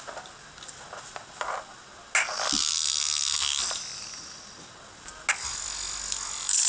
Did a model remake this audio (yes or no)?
no